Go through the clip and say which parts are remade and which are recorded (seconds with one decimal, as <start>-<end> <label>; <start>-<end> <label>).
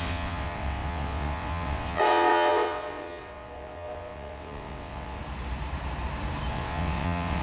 0.0-5.2 remade; 5.2-6.5 recorded; 6.5-7.4 remade